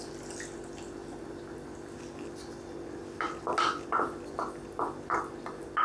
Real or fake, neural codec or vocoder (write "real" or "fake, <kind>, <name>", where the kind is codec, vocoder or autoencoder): real